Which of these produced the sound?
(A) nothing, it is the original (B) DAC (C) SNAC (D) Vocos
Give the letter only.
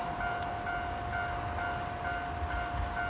A